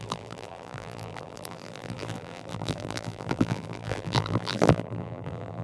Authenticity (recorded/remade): remade